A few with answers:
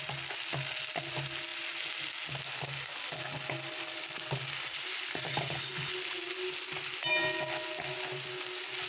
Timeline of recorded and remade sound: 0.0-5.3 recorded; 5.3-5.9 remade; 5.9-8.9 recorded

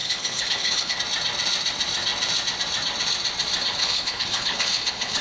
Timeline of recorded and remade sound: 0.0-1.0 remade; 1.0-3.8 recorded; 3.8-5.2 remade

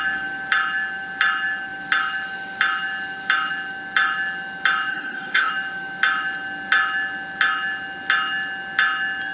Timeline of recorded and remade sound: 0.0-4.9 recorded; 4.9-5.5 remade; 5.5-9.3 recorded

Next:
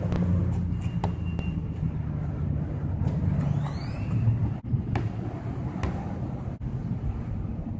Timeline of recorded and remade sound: 0.0-7.8 recorded

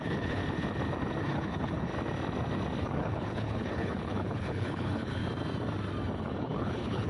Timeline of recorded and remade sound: 0.0-0.4 remade; 0.4-1.2 recorded; 1.2-1.9 remade; 1.9-2.8 recorded; 2.8-5.2 remade; 5.2-6.3 recorded; 6.3-7.1 remade